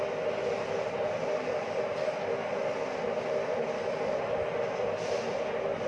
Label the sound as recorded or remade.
recorded